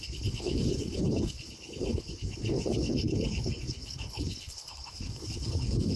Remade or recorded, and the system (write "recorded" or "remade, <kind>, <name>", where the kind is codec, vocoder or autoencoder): remade, codec, HILCodec